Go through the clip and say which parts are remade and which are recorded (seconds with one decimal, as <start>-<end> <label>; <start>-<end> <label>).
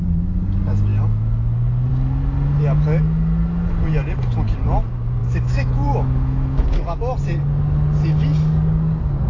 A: 0.0-5.2 recorded; 5.2-7.0 remade; 7.0-9.3 recorded